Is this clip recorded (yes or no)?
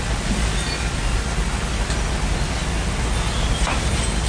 yes